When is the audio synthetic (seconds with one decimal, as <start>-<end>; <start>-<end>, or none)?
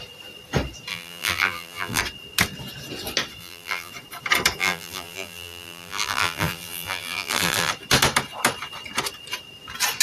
0.9-2.0; 3.4-3.9; 4.6-7.7